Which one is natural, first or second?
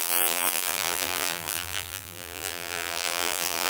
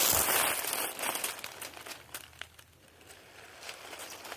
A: second